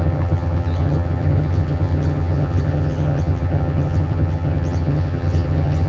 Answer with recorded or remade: remade